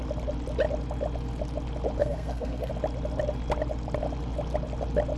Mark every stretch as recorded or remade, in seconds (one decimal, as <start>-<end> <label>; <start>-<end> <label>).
0.0-2.0 recorded; 2.0-2.7 remade; 2.7-5.2 recorded